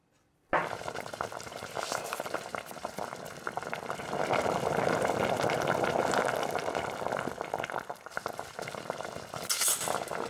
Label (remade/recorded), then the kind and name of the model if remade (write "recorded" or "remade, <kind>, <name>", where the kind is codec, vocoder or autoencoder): recorded